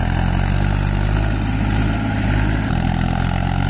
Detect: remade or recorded recorded